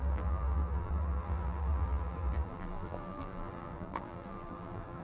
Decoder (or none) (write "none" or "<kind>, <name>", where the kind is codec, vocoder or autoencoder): vocoder, BigVGAN v2